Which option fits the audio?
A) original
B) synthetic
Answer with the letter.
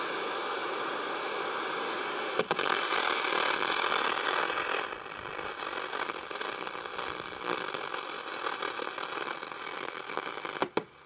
A